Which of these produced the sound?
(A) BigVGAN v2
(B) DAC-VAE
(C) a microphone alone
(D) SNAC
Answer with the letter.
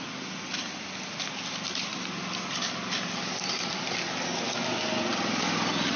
C